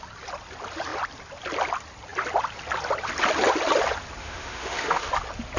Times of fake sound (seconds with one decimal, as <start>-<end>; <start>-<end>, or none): 4.2-5.1

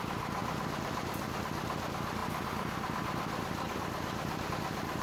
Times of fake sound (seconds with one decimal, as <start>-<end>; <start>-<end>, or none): 0.0-5.0

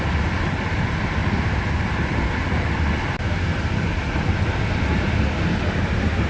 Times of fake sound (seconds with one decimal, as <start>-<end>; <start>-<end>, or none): none

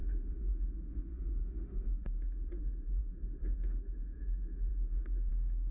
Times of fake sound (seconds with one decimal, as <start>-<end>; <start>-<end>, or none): 0.0-5.7